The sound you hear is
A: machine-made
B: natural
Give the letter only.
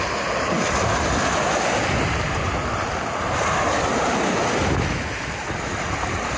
B